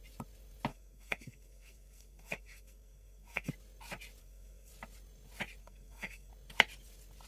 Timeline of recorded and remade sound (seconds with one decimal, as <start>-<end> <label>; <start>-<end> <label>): 0.0-0.7 recorded; 0.7-3.5 remade; 3.5-4.2 recorded; 4.2-4.7 remade; 4.7-5.6 recorded; 5.6-6.3 remade; 6.3-7.3 recorded